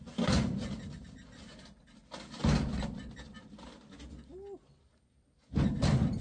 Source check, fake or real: real